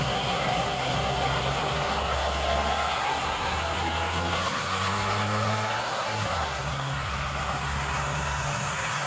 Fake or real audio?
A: fake